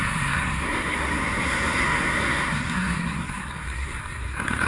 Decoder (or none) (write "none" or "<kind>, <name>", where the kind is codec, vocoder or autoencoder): codec, SNAC